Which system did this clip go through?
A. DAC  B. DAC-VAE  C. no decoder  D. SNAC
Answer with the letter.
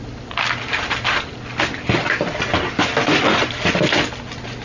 C